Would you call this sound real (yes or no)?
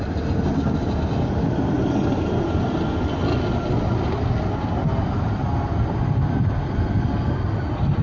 yes